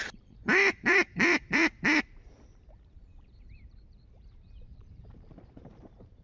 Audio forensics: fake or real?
fake